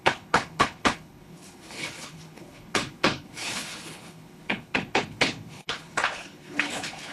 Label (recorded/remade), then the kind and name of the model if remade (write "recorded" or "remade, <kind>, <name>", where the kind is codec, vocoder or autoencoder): remade, codec, HILCodec